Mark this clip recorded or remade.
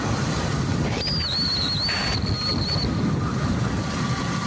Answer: recorded